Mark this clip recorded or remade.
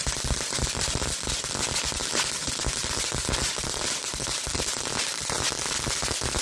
recorded